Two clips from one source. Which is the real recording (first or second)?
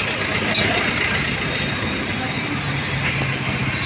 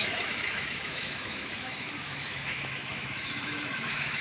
first